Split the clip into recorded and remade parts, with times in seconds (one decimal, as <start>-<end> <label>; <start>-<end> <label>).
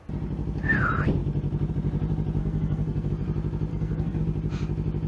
0.0-2.4 recorded; 2.4-3.1 remade; 3.1-3.7 recorded; 3.7-4.2 remade; 4.2-5.1 recorded